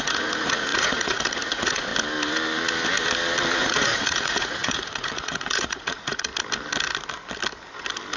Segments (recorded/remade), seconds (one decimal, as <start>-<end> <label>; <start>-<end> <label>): 0.0-1.9 remade; 1.9-3.6 recorded; 3.6-6.3 remade; 6.3-8.2 recorded